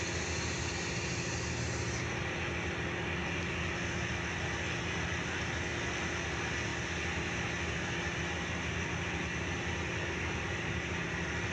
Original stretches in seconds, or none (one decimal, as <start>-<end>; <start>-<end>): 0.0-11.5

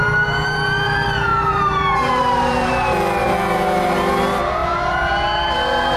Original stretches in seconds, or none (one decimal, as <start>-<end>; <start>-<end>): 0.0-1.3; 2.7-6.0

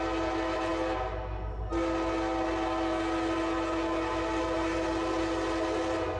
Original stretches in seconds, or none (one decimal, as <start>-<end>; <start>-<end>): 0.0-6.2

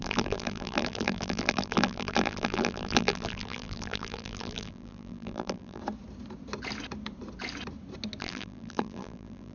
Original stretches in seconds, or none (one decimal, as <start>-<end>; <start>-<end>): 5.8-8.2

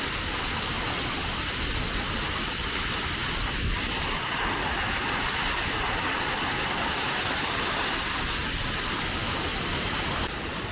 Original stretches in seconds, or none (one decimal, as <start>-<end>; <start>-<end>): 0.0-9.5; 10.1-10.7

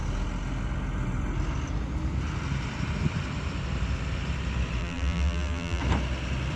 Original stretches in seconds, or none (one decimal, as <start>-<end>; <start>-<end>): 0.0-4.8; 5.8-6.6